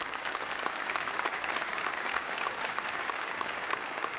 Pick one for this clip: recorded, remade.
remade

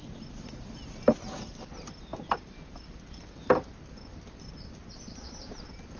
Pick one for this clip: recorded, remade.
recorded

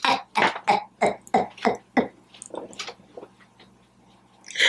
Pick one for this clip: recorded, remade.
recorded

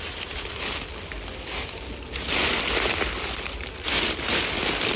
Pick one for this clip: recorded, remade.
recorded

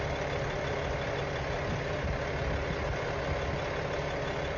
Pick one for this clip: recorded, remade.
recorded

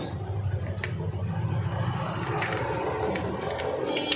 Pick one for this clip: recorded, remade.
recorded